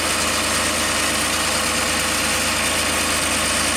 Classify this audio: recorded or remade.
recorded